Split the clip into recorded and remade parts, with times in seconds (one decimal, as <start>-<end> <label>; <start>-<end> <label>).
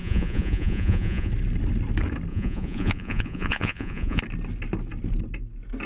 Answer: 0.0-1.3 remade; 1.3-2.3 recorded; 2.3-4.2 remade; 4.2-5.9 recorded